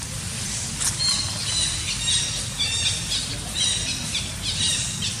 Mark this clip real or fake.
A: real